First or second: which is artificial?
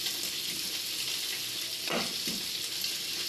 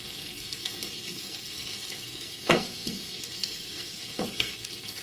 second